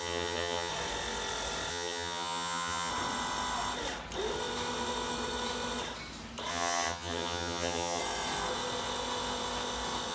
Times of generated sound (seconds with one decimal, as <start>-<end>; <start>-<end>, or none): 0.0-0.7; 1.7-2.9; 6.5-8.0